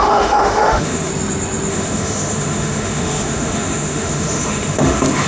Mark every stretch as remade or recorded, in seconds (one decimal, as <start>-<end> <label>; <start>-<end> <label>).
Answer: 0.0-1.1 remade; 1.1-1.7 recorded; 1.7-5.3 remade

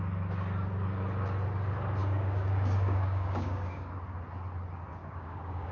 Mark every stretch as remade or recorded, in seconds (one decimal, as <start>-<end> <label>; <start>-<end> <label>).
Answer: 0.0-2.0 recorded; 2.0-3.9 remade; 3.9-5.0 recorded; 5.0-5.7 remade

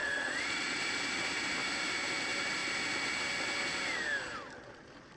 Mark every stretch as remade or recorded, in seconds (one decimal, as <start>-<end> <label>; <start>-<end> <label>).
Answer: 0.0-0.8 remade; 0.8-5.2 recorded

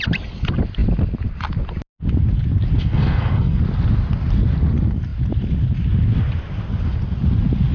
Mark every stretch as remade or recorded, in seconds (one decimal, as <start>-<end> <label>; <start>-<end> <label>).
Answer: 0.0-2.8 recorded; 2.8-3.6 remade; 3.6-7.7 recorded

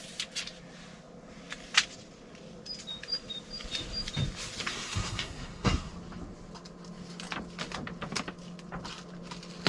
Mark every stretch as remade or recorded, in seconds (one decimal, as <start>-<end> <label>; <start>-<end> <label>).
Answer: 0.0-4.7 recorded; 4.7-5.9 remade; 5.9-9.7 recorded

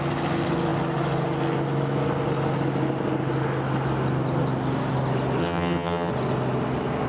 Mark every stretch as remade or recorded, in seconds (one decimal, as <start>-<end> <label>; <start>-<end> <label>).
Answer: 0.0-5.4 recorded; 5.4-6.1 remade; 6.1-7.1 recorded

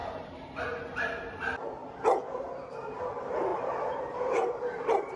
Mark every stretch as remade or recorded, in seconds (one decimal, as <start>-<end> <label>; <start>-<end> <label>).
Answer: 0.0-0.6 recorded; 0.6-1.8 remade; 1.8-2.9 recorded; 2.9-3.5 remade; 3.5-4.3 recorded; 4.3-5.2 remade

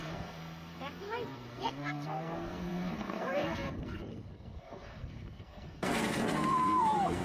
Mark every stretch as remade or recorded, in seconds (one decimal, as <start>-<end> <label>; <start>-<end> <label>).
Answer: 0.0-7.2 remade